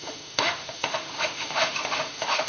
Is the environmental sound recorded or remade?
remade